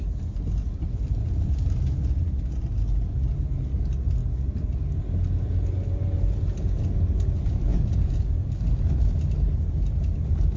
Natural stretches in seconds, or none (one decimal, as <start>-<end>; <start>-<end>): 0.0-7.7; 8.4-10.6